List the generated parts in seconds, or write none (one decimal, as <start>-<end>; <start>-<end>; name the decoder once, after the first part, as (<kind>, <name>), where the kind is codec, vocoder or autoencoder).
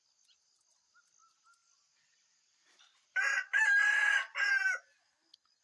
none